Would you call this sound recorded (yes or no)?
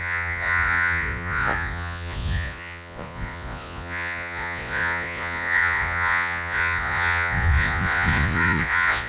no